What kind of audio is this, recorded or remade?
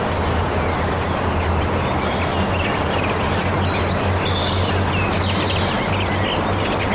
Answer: recorded